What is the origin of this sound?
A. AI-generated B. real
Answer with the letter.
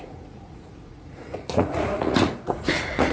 A